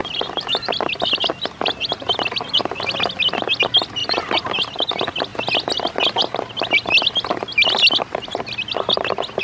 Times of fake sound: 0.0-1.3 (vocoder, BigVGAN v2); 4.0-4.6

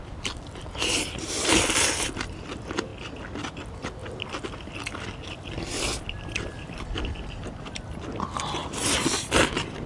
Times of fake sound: 0.0-2.9 (vocoder, BigVGAN v2); 3.5-4.0; 5.8-8.6

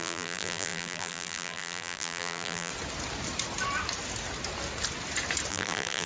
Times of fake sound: 0.0-2.7 (vocoder, BigVGAN v2); 5.5-6.1

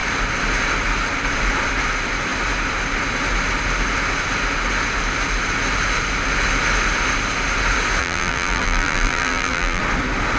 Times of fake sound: 8.0-9.8 (vocoder, BigVGAN v2)

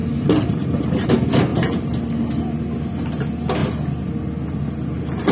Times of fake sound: 0.0-1.1 (vocoder, BigVGAN v2); 1.5-2.0